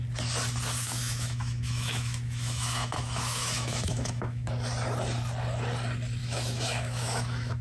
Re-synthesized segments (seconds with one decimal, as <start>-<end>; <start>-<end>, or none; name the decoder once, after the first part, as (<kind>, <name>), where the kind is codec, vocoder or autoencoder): 0.8-4.5 (autoencoder, DAC-VAE); 6.2-7.6